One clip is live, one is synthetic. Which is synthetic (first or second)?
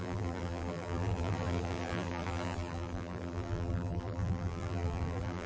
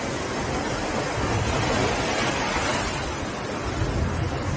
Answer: first